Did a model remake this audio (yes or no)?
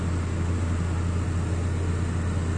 no